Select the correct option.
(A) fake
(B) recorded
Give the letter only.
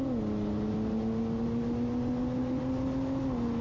B